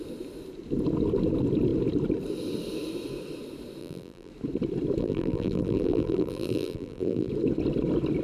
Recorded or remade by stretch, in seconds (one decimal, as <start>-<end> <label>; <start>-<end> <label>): 0.0-3.8 recorded; 3.8-4.3 remade; 4.3-5.0 recorded; 5.0-7.3 remade; 7.3-8.2 recorded